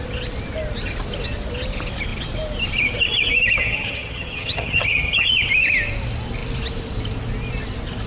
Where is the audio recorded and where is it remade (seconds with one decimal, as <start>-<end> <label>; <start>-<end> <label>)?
0.0-3.6 recorded; 3.6-5.3 remade; 5.3-8.1 recorded

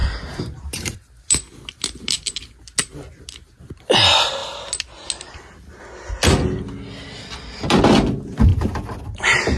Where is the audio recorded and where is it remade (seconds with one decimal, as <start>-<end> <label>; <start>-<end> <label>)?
0.0-9.6 recorded

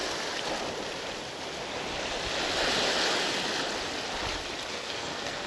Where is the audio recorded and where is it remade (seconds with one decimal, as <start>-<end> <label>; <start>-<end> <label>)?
0.0-4.7 recorded; 4.7-5.5 remade

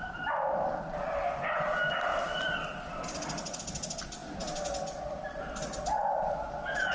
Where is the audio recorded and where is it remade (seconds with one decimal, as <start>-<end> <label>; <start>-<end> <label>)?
0.0-6.9 recorded

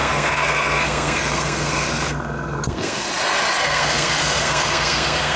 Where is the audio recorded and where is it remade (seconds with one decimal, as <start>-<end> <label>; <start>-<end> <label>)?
0.0-3.1 remade; 3.1-3.6 recorded; 3.6-5.4 remade